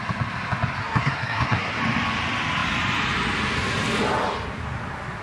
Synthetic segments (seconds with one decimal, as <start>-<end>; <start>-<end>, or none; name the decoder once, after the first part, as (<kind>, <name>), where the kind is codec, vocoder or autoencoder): 0.8-1.8 (codec, SNAC)